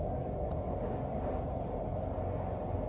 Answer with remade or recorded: recorded